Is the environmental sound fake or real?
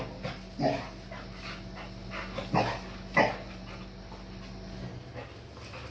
real